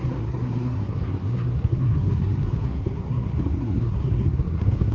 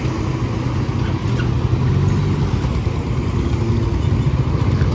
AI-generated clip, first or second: first